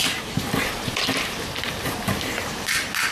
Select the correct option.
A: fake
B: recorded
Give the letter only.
A